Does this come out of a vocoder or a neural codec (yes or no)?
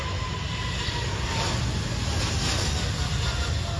no